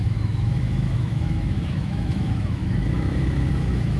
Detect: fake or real fake